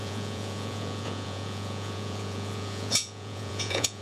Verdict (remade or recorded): remade